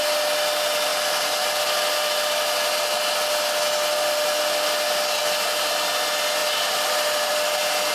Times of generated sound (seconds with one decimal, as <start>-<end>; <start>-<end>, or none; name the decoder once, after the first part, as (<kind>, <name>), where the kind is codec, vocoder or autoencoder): 0.9-5.2 (vocoder, BigVGAN v2); 6.4-7.3